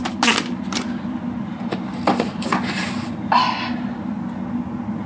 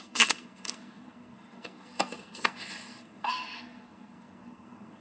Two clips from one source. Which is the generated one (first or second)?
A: second